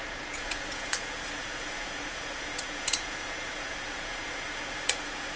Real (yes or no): no